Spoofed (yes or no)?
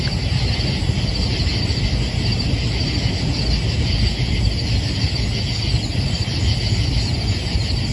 no